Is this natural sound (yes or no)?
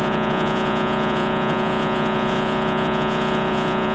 no